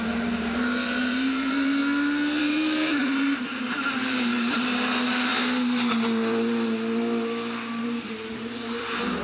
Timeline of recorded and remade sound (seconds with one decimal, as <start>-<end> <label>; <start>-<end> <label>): 0.0-1.8 remade; 1.8-2.4 recorded; 2.4-5.3 remade; 5.3-7.8 recorded; 7.8-9.2 remade